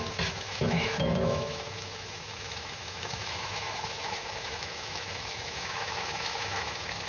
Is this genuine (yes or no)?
no